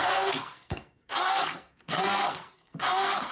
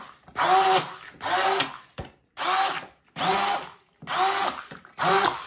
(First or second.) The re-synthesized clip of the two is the first